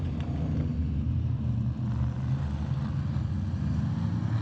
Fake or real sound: real